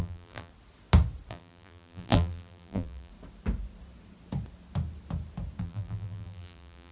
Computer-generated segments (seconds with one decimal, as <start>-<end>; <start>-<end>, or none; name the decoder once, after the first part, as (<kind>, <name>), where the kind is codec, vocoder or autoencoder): 0.0-0.5 (vocoder, BigVGAN v2); 1.3-3.1; 5.6-6.9